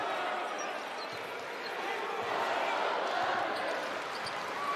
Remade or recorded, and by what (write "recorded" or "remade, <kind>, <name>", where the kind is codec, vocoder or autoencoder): recorded